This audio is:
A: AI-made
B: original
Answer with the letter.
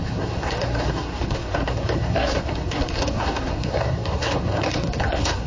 A